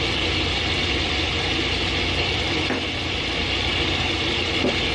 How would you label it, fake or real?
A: real